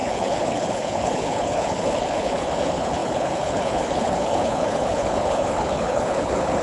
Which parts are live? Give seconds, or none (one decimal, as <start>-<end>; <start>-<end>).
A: none